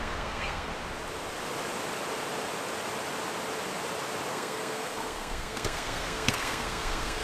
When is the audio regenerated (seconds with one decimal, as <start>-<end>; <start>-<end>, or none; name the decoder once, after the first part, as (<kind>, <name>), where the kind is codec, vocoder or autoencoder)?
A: 0.0-0.7 (codec, SNAC); 4.3-7.2